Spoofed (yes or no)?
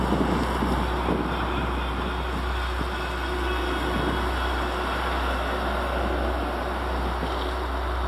no